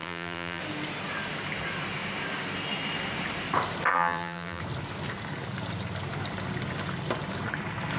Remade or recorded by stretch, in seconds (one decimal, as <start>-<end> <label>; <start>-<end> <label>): 0.0-0.6 remade; 0.6-3.9 recorded; 3.9-4.6 remade; 4.6-8.0 recorded